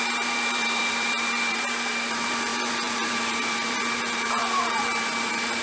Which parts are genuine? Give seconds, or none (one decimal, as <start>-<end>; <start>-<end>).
none